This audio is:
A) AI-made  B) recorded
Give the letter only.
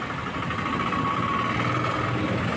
B